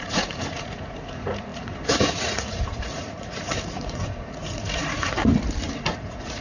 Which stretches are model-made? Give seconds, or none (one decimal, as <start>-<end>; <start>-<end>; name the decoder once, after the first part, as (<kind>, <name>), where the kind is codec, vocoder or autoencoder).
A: 0.0-5.2 (vocoder, Vocos); 5.7-6.4